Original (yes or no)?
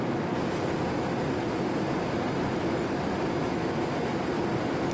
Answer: yes